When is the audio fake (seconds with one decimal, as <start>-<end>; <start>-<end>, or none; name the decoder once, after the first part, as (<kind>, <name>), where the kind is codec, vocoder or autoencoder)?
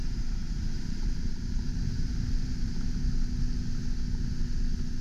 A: 0.4-3.0 (vocoder, BigVGAN v2)